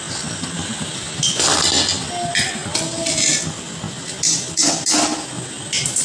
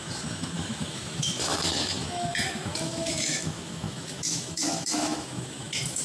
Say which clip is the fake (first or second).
second